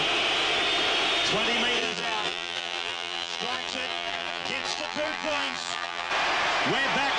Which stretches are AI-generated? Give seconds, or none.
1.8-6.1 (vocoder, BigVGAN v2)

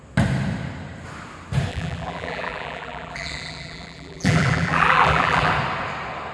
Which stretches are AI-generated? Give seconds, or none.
1.7-5.5 (vocoder, BigVGAN v2)

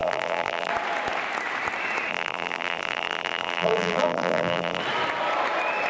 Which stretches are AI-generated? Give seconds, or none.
0.0-0.7 (vocoder, BigVGAN v2); 2.1-4.8

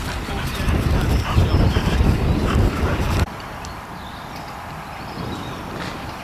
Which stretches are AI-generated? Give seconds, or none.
2.4-4.2 (vocoder, BigVGAN v2)

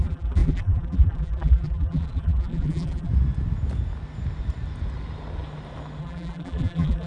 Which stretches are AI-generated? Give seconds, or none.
0.0-3.1 (vocoder, BigVGAN v2); 6.0-7.1

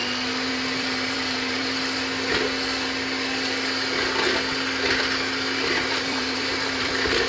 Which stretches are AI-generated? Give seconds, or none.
0.5-1.6 (vocoder, BigVGAN v2); 5.7-7.3